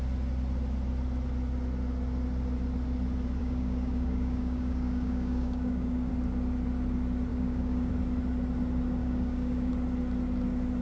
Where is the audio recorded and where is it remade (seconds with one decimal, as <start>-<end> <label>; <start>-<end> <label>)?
0.0-3.4 recorded; 3.4-6.1 remade; 6.1-7.3 recorded; 7.3-7.9 remade; 7.9-9.0 recorded; 9.0-9.7 remade; 9.7-10.8 recorded